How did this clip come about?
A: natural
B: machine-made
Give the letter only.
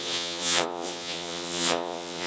B